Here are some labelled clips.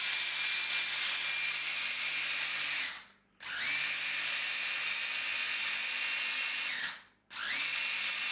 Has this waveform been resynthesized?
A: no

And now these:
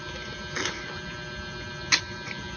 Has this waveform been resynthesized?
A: no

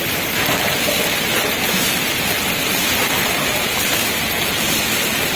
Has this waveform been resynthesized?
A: no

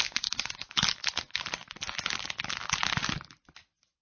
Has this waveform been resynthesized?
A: no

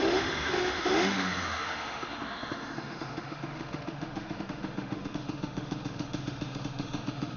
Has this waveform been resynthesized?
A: yes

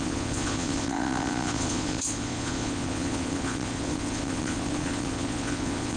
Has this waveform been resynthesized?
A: yes